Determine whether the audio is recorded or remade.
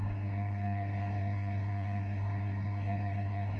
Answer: remade